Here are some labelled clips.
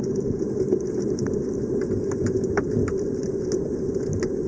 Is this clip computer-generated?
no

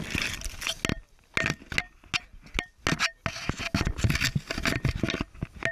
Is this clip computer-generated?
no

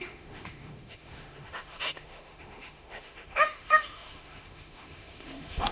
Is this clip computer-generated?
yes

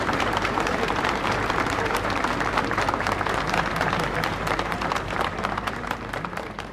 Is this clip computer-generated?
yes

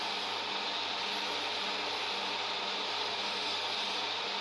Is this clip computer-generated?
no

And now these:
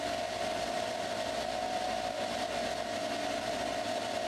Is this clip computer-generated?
no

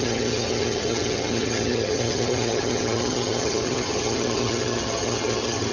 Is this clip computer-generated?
yes